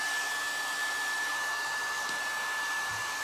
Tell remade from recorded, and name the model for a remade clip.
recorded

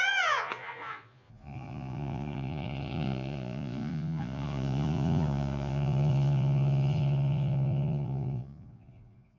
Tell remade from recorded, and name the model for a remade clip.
remade, vocoder, Vocos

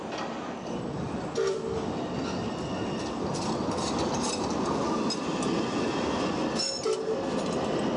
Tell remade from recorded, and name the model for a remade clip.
recorded